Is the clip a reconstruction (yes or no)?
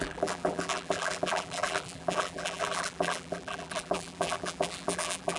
yes